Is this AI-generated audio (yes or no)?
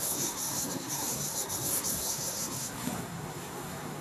yes